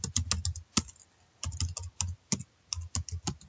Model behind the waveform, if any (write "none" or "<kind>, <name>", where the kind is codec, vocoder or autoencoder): none